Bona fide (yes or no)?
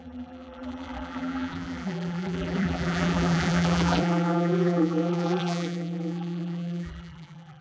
no